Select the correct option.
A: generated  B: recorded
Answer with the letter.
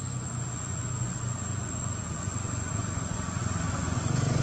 A